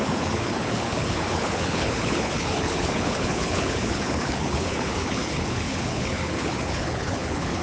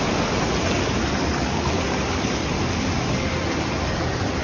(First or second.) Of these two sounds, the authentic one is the second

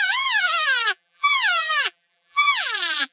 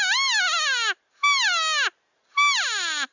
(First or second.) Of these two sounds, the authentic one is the second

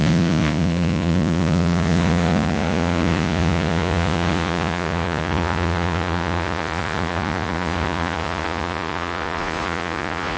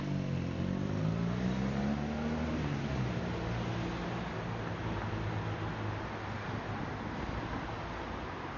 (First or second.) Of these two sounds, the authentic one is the second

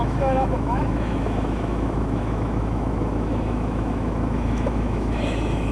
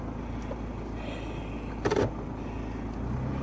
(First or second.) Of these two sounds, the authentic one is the second